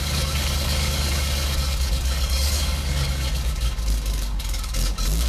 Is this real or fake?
fake